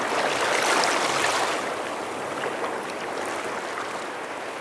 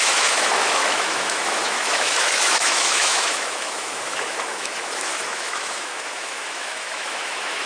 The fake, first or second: second